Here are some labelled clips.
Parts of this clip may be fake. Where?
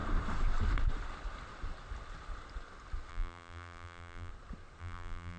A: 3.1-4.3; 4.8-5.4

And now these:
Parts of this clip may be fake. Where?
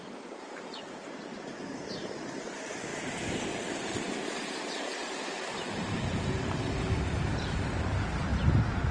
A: 0.0-8.3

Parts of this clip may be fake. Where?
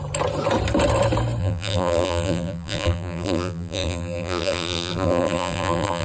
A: 1.4-6.0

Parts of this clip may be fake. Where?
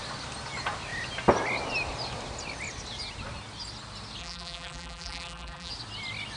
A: 4.2-5.7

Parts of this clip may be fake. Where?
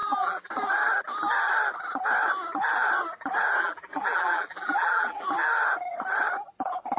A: 0.0-0.5; 3.6-5.3